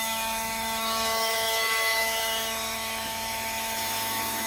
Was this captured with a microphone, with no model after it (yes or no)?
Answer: no